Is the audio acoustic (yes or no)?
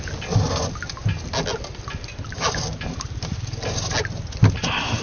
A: yes